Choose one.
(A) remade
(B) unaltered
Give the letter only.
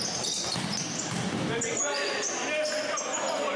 B